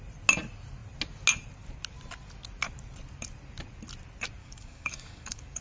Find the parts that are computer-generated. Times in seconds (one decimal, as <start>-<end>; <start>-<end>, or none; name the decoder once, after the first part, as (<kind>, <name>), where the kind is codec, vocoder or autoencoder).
4.4-5.6 (codec, DAC)